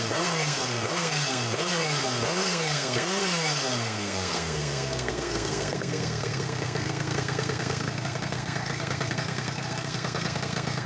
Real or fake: fake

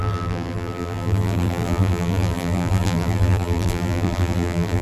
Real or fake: fake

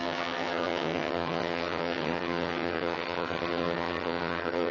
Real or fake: fake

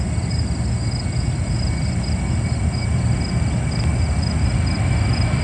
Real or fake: real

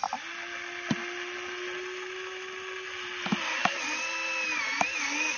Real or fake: real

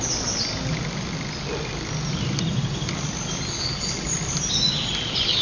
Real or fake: real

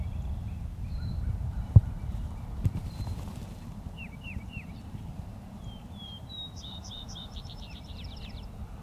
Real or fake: fake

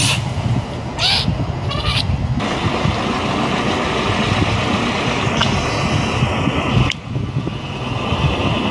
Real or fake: real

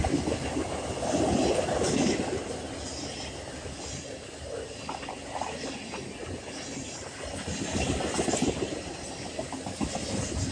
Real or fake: real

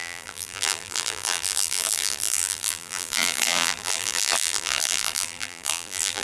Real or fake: fake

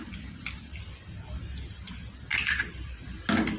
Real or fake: real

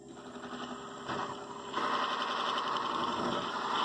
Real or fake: real